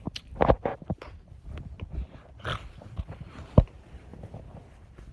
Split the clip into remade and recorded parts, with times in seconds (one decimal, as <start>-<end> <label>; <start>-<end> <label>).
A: 0.0-0.7 recorded; 0.7-1.3 remade; 1.3-5.1 recorded